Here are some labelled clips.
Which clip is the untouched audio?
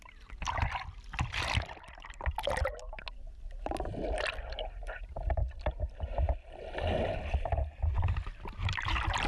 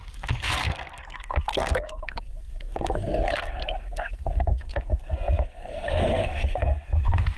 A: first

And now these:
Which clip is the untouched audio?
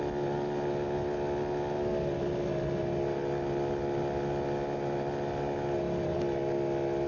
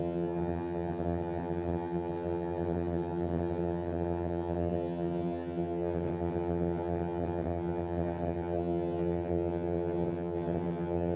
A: first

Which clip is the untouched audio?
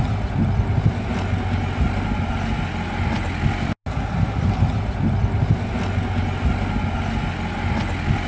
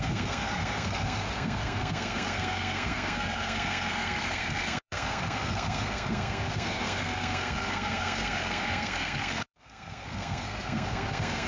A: first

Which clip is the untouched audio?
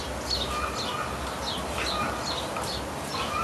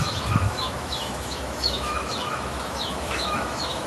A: first